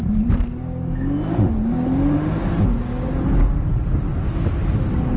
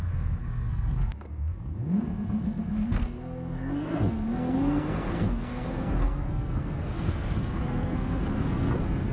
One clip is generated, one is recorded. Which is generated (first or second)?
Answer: second